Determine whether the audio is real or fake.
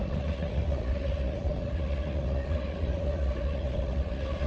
fake